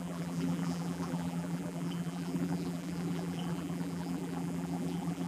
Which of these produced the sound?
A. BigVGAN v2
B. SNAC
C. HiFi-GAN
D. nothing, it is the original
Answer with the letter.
A